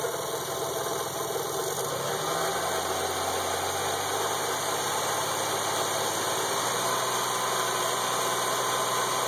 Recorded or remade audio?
recorded